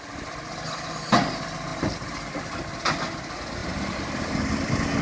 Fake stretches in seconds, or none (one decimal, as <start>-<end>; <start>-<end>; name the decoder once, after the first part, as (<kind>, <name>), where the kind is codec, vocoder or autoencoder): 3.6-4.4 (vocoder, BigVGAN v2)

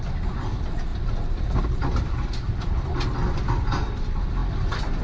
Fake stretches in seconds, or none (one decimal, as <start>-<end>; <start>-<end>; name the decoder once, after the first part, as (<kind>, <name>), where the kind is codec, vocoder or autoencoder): 0.0-5.0 (vocoder, BigVGAN v2)

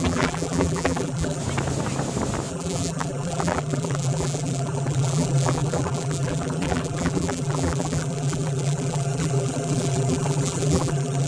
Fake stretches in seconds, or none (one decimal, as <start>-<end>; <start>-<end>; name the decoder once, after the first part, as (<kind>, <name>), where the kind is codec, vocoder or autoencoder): 0.0-1.4 (vocoder, BigVGAN v2); 2.5-11.3

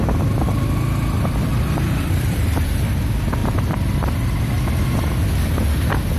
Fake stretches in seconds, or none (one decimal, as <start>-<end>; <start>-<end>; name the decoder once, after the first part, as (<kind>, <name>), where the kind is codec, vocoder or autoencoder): 1.5-2.9 (vocoder, BigVGAN v2); 3.4-4.1

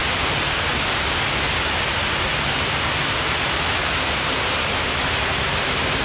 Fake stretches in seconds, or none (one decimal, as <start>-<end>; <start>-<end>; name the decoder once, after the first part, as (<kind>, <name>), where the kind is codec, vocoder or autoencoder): 0.0-0.7 (vocoder, BigVGAN v2); 2.3-6.0